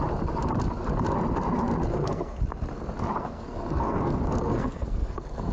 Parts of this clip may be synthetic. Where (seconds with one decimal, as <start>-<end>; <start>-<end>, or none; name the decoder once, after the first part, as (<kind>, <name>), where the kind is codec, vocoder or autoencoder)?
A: 1.9-2.4 (codec, SNAC); 3.2-5.5